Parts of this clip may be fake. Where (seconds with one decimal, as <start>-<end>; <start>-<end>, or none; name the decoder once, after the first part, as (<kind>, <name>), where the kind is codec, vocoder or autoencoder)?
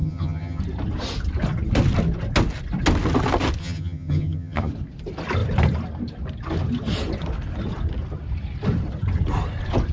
0.0-0.6 (vocoder, HiFi-GAN); 3.6-4.7